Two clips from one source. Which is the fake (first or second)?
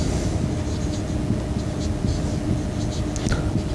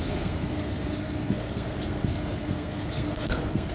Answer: second